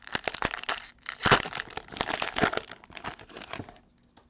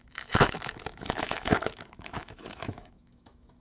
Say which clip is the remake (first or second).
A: second